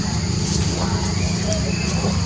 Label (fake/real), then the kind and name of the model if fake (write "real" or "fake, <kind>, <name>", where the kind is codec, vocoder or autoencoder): real